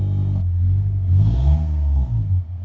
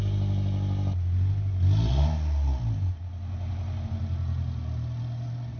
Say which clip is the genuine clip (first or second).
second